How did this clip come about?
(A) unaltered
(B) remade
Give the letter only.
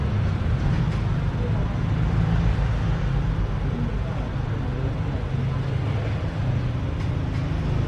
A